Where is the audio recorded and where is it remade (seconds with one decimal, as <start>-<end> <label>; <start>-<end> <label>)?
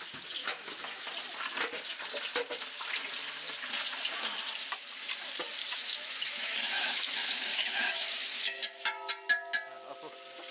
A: 0.0-0.4 recorded; 0.4-1.0 remade; 1.0-5.6 recorded; 5.6-9.1 remade; 9.1-10.5 recorded